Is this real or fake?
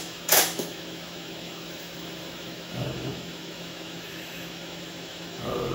fake